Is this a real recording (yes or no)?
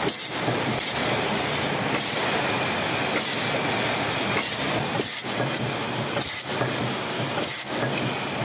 yes